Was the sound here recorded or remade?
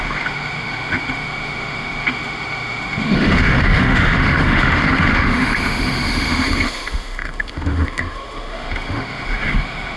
remade